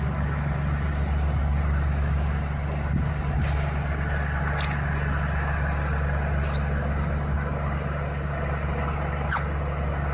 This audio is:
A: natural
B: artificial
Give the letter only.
A